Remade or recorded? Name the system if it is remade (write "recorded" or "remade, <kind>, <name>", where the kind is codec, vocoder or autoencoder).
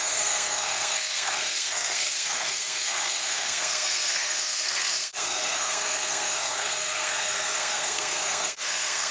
remade, codec, SNAC